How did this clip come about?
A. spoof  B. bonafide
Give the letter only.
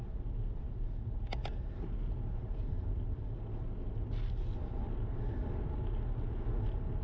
B